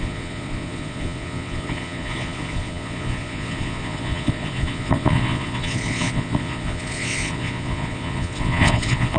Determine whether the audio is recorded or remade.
remade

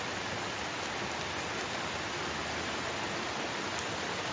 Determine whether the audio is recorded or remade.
recorded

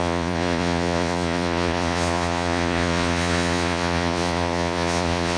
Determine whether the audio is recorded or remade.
remade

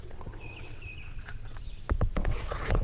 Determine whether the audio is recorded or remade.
remade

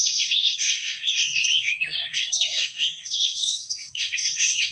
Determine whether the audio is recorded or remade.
remade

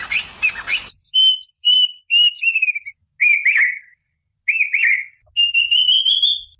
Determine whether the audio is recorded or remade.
recorded